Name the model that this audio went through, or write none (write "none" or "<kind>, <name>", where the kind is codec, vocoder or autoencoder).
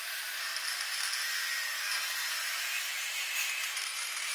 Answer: vocoder, BigVGAN v2